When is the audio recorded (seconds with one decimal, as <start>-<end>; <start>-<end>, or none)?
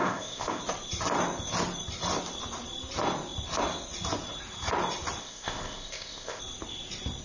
0.6-5.2; 6.4-7.2